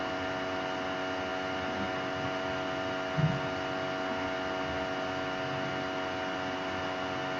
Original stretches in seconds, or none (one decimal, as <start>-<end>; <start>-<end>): 0.0-7.4